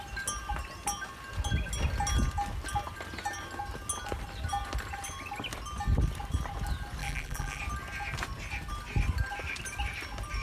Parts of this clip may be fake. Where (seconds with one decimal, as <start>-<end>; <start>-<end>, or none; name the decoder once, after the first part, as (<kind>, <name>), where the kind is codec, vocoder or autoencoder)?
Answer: 7.0-7.6 (vocoder, BigVGAN v2)